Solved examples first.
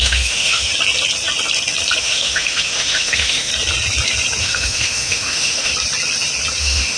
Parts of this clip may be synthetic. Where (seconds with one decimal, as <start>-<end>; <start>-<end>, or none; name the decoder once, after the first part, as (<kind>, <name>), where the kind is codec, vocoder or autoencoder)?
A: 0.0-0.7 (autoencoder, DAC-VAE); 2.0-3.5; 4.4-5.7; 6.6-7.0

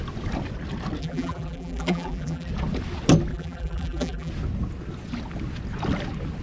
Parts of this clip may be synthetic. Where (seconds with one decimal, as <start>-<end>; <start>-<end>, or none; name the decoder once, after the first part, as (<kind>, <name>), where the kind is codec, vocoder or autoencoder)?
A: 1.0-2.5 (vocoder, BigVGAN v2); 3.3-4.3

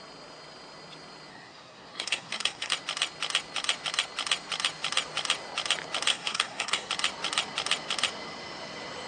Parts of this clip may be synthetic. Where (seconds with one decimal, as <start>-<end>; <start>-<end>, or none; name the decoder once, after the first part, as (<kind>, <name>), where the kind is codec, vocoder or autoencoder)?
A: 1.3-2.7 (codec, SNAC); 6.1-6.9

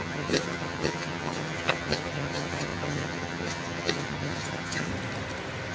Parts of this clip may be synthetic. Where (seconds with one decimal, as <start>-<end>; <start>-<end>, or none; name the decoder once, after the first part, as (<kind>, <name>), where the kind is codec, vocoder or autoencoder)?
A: 0.0-4.9 (vocoder, HiFi-GAN)